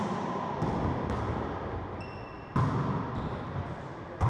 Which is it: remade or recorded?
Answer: recorded